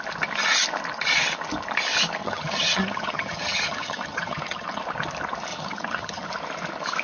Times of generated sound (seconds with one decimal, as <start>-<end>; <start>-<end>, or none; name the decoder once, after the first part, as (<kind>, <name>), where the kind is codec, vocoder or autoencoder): 2.2-4.8 (vocoder, HiFi-GAN); 5.5-6.3

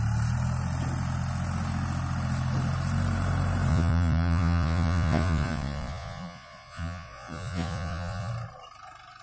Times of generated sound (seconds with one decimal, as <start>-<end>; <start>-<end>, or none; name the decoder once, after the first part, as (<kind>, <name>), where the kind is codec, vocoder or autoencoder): 3.7-8.3 (vocoder, Vocos)

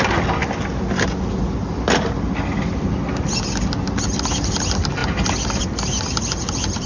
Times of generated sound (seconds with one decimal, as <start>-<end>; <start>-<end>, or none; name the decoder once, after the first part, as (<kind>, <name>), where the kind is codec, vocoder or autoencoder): none

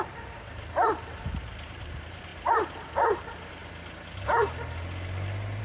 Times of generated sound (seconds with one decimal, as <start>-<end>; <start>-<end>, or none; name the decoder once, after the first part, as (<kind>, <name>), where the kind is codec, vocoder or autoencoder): 0.0-2.3 (vocoder, BigVGAN v2); 2.9-3.6

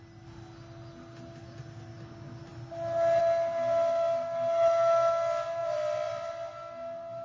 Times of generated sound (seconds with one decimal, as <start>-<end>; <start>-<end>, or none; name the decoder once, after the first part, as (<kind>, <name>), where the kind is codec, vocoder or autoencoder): 5.6-6.3 (vocoder, BigVGAN v2)

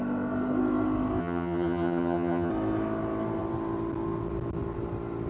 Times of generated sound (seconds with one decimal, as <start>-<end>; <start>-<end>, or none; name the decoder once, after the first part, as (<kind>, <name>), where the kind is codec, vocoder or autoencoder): 1.2-2.5 (vocoder, HiFi-GAN)

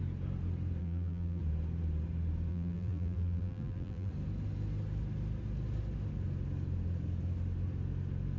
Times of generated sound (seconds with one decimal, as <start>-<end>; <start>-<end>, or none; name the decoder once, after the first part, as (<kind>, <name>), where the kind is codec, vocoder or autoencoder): 0.8-1.4 (vocoder, BigVGAN v2); 2.5-4.1